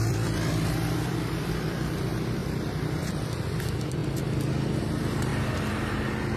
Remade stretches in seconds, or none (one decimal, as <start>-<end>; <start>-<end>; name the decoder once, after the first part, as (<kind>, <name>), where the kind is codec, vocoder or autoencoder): 0.0-4.0 (vocoder, BigVGAN v2); 4.8-6.4

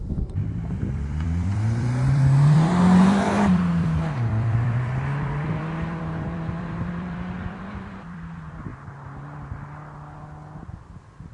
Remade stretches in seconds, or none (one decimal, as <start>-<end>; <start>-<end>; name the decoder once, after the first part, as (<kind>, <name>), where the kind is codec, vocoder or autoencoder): 0.0-8.7 (vocoder, BigVGAN v2); 10.6-11.3

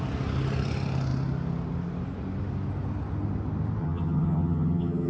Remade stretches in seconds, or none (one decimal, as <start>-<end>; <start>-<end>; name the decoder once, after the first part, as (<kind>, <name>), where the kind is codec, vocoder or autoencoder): 3.8-5.1 (vocoder, HiFi-GAN)

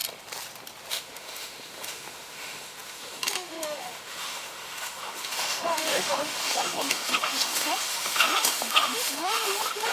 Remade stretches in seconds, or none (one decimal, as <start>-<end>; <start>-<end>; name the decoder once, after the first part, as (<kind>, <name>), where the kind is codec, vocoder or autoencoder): 0.9-9.9 (autoencoder, DAC-VAE)